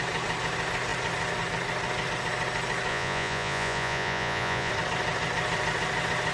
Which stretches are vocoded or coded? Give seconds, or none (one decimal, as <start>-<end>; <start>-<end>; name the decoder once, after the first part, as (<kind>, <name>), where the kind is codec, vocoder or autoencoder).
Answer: 2.9-4.7 (vocoder, Vocos)